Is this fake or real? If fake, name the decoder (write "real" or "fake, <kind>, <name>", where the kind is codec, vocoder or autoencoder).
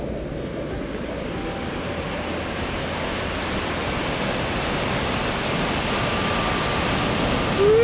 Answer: real